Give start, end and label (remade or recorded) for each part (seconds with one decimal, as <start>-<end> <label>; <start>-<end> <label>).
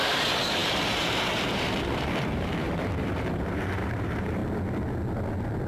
0.0-4.4 remade; 4.4-5.7 recorded